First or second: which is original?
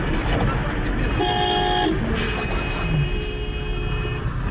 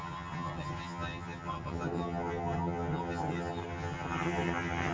first